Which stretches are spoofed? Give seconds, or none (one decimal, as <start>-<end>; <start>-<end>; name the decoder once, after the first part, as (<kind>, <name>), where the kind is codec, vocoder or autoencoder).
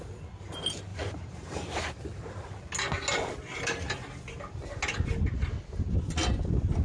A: 0.9-1.9 (vocoder, BigVGAN v2)